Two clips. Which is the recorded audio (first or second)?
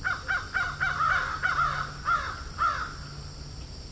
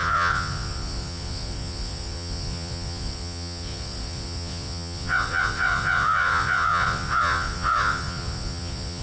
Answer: first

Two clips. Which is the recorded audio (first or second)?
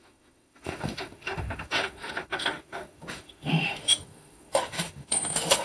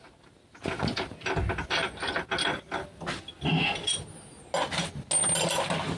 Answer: second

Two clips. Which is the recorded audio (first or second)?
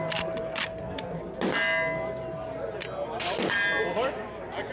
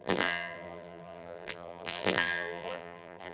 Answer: first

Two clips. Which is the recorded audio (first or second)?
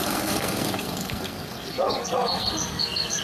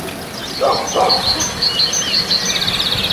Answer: second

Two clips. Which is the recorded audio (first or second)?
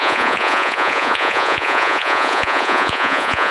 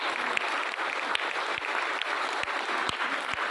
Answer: second